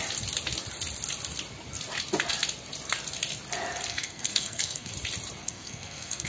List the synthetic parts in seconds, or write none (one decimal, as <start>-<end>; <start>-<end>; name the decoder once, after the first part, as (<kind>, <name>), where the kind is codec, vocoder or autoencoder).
3.9-4.9 (codec, SNAC); 5.4-6.3